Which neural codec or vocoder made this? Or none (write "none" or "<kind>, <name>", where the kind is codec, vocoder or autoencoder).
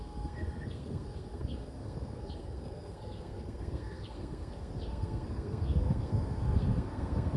codec, SNAC